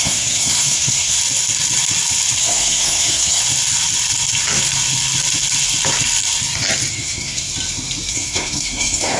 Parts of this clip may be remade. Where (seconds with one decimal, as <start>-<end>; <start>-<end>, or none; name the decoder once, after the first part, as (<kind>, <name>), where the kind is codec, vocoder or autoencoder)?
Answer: 0.0-1.2 (codec, SNAC); 2.4-3.4; 6.9-7.5; 8.1-9.2